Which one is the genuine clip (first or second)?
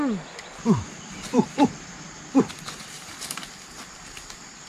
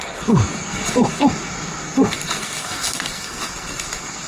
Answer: first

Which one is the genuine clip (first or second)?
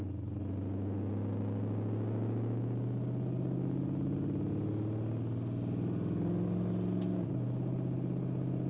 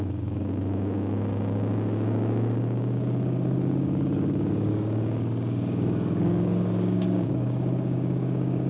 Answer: first